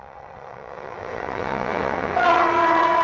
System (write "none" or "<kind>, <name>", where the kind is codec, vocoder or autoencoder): vocoder, WaveNeXt